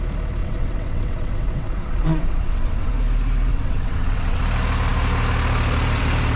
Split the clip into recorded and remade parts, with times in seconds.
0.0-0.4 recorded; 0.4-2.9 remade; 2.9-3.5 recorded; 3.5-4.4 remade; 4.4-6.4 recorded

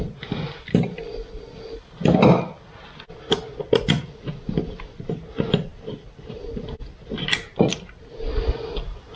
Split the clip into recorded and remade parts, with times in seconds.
0.0-9.2 recorded

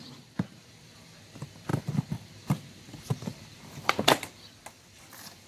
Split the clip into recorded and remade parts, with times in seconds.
0.0-5.5 remade

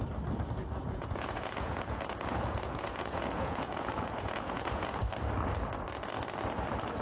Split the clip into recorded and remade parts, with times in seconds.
0.0-0.8 recorded; 0.8-5.0 remade; 5.0-7.0 recorded

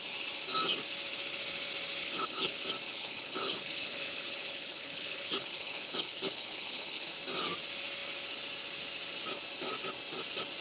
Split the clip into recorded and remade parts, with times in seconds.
0.0-2.0 recorded; 2.0-2.5 remade; 2.5-2.9 recorded; 2.9-7.1 remade; 7.1-10.6 recorded

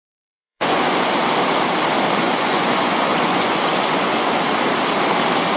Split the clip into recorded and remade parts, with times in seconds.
0.0-1.1 remade; 1.1-2.2 recorded; 2.2-4.4 remade; 4.4-5.6 recorded

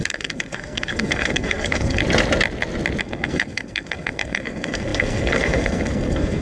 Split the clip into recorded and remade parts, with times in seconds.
0.0-2.0 remade; 2.0-3.0 recorded; 3.0-6.4 remade

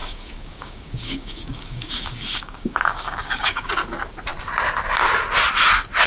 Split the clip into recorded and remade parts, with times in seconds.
0.0-3.7 remade; 3.7-6.1 recorded